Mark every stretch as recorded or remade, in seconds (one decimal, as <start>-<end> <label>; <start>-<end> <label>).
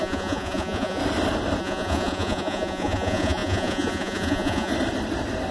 0.0-1.0 remade; 1.0-1.6 recorded; 1.6-4.7 remade; 4.7-5.5 recorded